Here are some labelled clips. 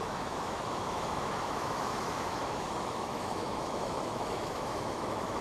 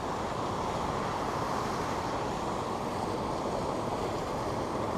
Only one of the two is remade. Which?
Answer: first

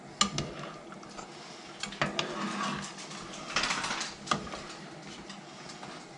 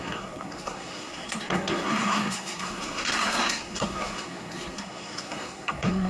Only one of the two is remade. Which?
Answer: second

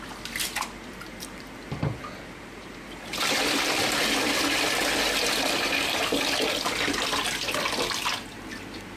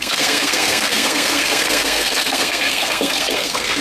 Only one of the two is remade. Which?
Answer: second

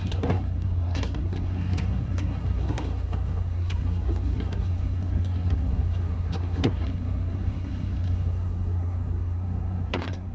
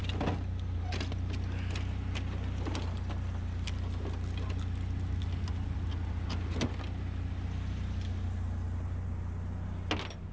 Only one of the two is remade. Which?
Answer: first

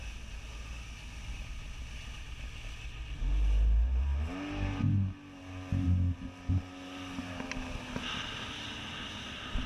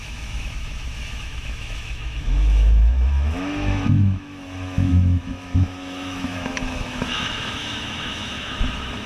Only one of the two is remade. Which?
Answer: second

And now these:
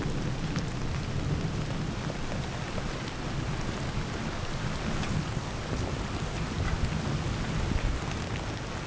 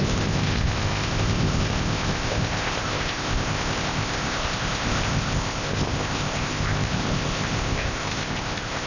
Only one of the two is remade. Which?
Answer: second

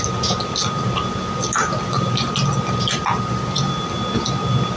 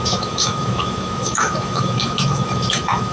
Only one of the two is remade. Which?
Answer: second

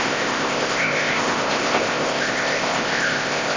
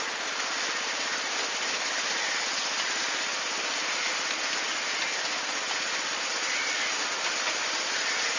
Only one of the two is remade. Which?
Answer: first